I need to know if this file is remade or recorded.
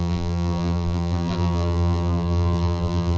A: remade